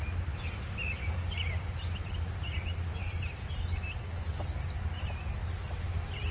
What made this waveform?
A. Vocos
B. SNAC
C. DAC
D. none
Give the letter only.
D